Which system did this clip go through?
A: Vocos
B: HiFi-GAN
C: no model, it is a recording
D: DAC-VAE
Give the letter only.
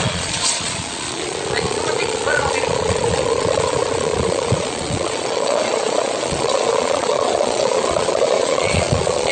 A